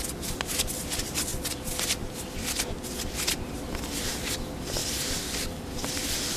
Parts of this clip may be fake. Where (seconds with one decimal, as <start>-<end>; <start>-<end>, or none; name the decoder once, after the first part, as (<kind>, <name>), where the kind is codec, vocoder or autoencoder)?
none